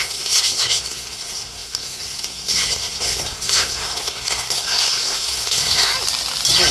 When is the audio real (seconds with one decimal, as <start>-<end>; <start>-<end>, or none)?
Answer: 5.9-6.7